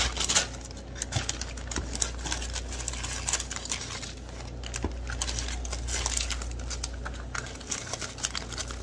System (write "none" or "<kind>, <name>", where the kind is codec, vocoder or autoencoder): none